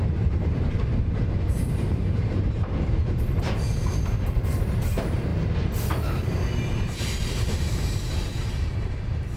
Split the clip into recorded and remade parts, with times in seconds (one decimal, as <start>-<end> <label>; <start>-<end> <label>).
0.0-5.3 remade; 5.3-7.7 recorded; 7.7-9.4 remade